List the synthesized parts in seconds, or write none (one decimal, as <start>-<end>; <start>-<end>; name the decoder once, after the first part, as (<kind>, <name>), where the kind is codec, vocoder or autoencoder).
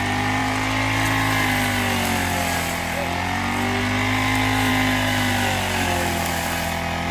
none